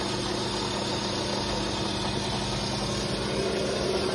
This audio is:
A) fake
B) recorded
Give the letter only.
B